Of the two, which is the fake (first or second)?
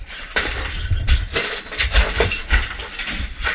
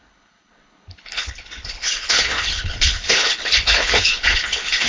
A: second